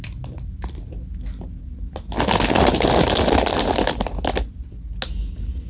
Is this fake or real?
real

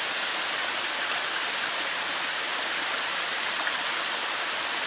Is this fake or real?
real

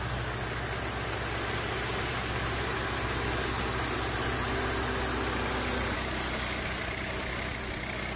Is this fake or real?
real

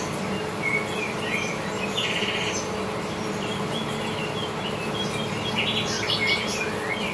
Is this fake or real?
real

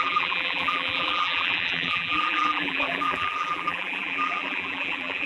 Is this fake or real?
fake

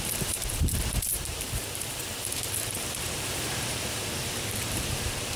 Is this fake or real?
fake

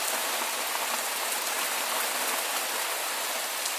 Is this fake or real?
real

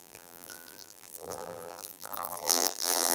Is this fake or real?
fake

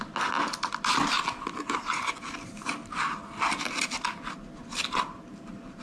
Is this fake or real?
real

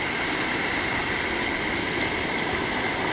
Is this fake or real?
real